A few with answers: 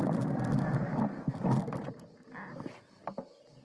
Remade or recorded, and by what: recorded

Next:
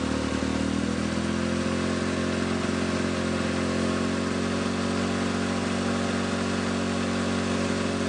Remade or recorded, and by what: recorded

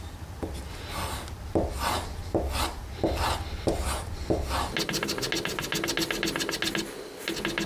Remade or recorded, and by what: recorded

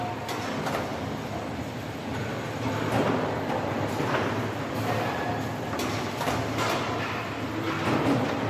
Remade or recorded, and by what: recorded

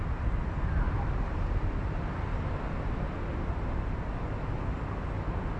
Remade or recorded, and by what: recorded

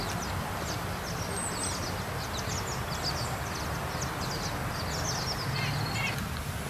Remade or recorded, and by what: recorded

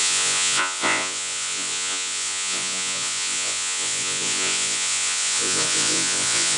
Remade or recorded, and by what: remade, vocoder, Vocos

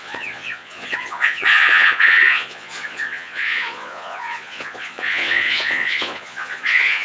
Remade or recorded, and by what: remade, vocoder, Vocos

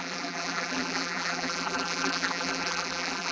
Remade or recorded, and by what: remade, vocoder, BigVGAN v2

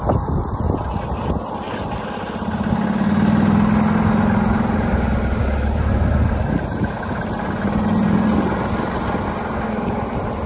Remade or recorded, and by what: recorded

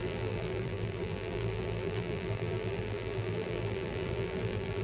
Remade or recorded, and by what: remade, vocoder, BigVGAN v2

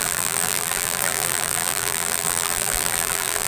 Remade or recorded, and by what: remade, vocoder, BigVGAN v2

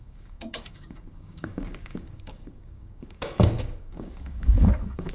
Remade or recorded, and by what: remade, codec, DAC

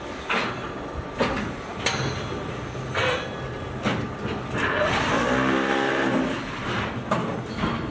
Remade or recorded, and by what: recorded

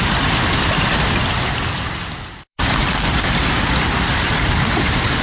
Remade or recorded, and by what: remade, vocoder, BigVGAN v2